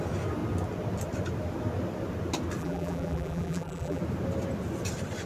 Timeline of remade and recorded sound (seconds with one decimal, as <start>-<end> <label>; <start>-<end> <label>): 0.0-2.6 recorded; 2.6-4.0 remade; 4.0-5.3 recorded